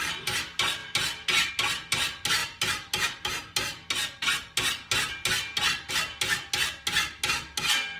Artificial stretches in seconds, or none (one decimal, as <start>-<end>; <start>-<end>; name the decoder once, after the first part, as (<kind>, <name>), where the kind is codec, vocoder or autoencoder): none